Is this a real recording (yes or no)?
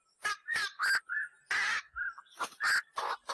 yes